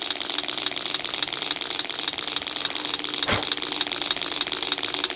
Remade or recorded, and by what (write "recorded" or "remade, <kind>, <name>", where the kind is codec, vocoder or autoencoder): recorded